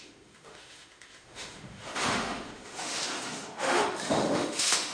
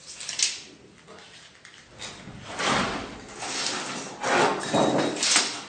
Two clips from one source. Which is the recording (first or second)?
second